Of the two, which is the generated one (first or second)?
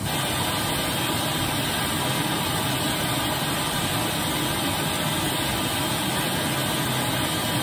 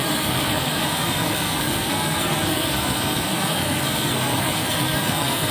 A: second